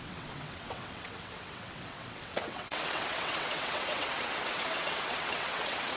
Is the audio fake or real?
fake